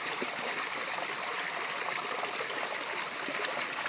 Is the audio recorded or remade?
recorded